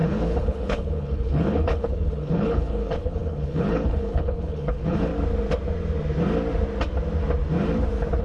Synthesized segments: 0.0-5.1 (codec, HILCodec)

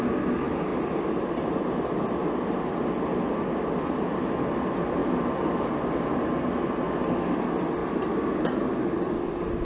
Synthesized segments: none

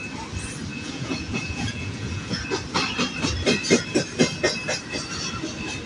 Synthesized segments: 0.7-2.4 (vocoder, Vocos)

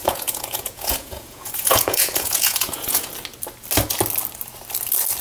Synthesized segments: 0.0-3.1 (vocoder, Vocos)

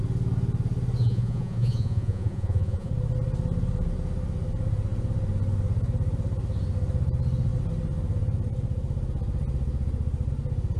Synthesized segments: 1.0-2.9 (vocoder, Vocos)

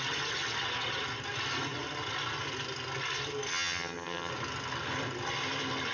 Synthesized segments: 3.5-4.3 (vocoder, HiFi-GAN)

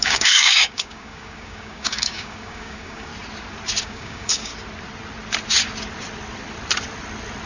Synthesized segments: 0.0-3.1 (codec, DAC); 3.8-4.5

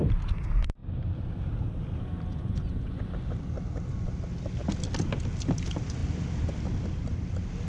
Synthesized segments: 2.3-3.1 (vocoder, Vocos)